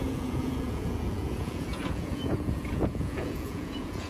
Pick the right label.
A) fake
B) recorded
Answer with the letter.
A